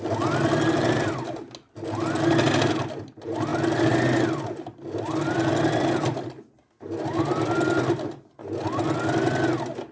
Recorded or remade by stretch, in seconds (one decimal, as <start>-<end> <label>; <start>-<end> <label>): 0.0-9.9 recorded